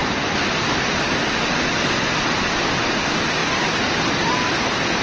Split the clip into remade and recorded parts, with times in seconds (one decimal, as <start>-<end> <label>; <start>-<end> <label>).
0.0-5.0 recorded